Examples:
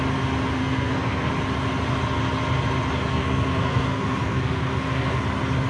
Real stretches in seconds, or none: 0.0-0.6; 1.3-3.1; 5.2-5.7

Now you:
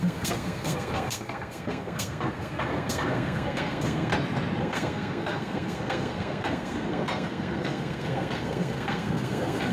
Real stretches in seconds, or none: 4.1-4.6

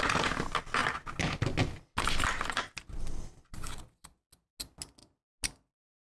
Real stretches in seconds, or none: 0.0-6.1

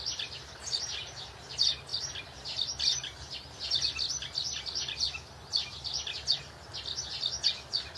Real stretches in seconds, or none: 0.0-8.0

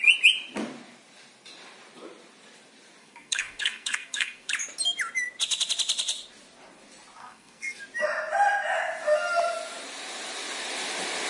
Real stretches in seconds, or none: 0.0-3.0; 4.5-7.2; 7.8-11.3

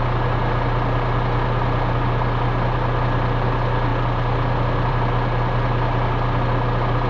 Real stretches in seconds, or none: 0.0-7.1